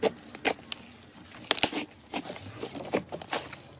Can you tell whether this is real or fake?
real